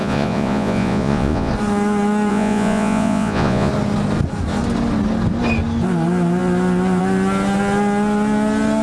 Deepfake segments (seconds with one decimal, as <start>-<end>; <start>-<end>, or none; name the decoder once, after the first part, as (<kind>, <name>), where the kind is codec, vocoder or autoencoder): 0.0-1.5 (vocoder, Vocos); 2.3-3.7